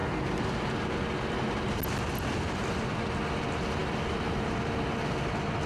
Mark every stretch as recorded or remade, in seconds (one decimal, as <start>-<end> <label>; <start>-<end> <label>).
0.0-5.7 recorded